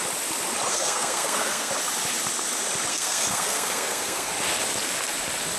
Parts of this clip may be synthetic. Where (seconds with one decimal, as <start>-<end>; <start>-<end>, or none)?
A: 0.7-1.7; 2.9-4.3

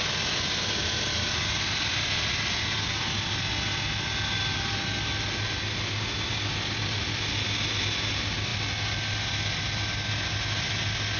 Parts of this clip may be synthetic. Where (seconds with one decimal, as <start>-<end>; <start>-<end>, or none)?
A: none

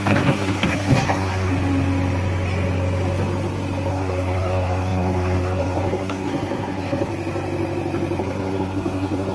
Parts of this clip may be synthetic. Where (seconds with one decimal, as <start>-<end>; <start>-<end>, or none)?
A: 0.0-1.5; 3.9-7.1; 8.2-9.3

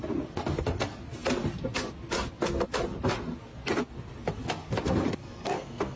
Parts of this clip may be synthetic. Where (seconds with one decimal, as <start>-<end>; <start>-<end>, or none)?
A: 5.2-6.0

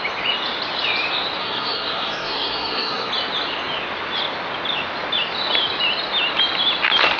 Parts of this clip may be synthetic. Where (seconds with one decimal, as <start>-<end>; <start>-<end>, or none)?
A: 1.4-3.1

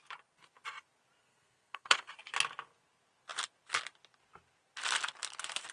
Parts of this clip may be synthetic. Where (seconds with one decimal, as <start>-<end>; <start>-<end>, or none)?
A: 1.2-2.1

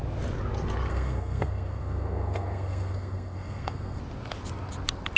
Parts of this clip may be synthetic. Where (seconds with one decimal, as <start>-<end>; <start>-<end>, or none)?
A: 0.9-4.0